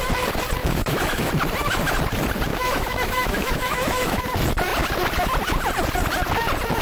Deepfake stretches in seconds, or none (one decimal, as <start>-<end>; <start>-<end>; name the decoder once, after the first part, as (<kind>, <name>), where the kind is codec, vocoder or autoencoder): 0.6-1.3 (autoencoder, DAC-VAE); 2.5-4.2